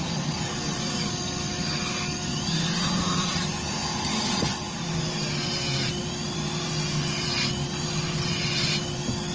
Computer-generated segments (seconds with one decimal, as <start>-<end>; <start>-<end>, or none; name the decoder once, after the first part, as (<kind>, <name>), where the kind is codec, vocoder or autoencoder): none

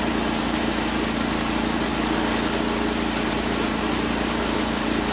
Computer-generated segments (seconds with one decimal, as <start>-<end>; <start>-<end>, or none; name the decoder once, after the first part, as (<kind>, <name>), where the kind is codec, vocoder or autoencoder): 0.0-1.9 (vocoder, BigVGAN v2); 3.3-5.1

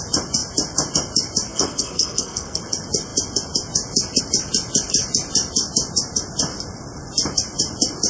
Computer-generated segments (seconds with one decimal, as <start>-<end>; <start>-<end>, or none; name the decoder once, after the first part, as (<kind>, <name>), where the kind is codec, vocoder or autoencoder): 1.5-2.6 (codec, SNAC)

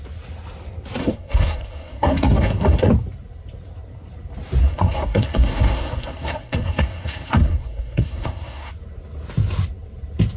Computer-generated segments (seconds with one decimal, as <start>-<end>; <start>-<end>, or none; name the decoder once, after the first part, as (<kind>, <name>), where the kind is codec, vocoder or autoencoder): 1.0-2.9 (codec, SNAC); 4.6-8.7

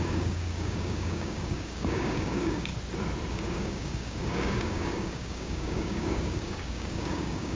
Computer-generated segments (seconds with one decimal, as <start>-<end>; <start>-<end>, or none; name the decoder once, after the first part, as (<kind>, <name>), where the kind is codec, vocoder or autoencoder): 0.0-2.7 (codec, DAC); 3.3-7.5

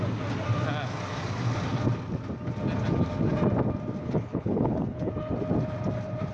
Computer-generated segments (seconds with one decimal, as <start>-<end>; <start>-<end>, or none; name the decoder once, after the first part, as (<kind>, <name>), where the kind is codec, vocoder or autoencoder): 4.0-5.1 (codec, HILCodec)

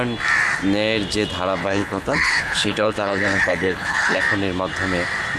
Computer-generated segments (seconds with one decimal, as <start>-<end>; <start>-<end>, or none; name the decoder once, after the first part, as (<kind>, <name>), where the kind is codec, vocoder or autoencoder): 1.6-4.2 (codec, HILCodec)

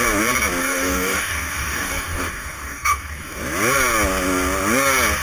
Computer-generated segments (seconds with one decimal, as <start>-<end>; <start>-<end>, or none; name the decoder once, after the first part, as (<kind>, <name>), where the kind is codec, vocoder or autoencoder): 0.6-3.4 (codec, DAC)